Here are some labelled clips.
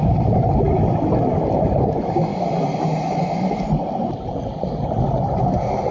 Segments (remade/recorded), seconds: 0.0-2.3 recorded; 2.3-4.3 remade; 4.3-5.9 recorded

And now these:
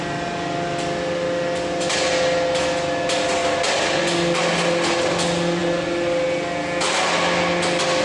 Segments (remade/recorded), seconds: 0.0-8.0 recorded

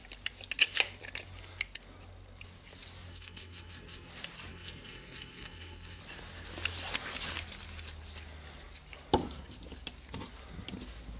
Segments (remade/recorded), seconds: 0.0-3.1 recorded; 3.1-4.1 remade; 4.1-4.5 recorded; 4.5-6.0 remade; 6.0-11.2 recorded

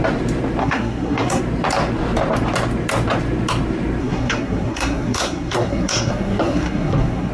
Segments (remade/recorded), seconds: 0.0-0.6 recorded; 0.6-1.4 remade; 1.4-4.0 recorded; 4.0-7.3 remade

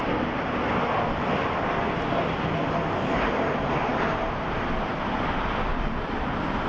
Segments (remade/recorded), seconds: 0.0-6.7 recorded